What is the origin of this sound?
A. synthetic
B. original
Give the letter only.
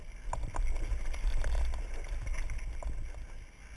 B